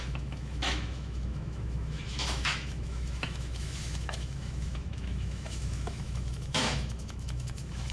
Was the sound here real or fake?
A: fake